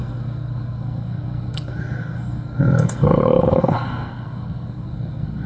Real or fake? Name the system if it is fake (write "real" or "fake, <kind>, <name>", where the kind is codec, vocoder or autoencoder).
fake, codec, SNAC